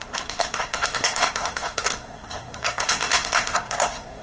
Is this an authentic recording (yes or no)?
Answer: no